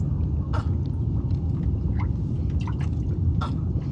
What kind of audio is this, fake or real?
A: real